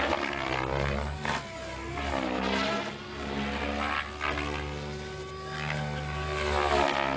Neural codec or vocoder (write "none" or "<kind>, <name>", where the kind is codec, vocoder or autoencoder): none